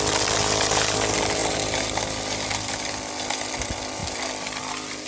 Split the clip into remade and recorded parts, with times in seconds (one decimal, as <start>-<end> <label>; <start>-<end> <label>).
0.0-5.1 recorded